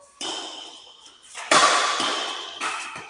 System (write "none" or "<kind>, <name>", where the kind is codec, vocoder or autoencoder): vocoder, BigVGAN v2